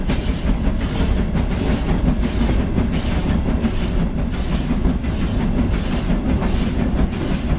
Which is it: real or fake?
real